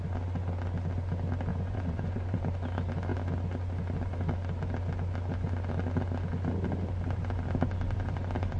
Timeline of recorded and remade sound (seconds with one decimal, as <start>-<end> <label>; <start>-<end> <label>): 0.0-1.5 recorded; 1.5-2.4 remade; 2.4-8.6 recorded